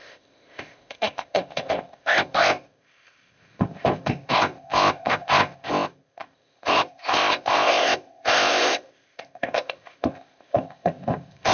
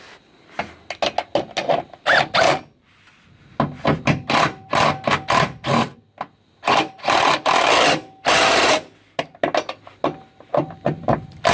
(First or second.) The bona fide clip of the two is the second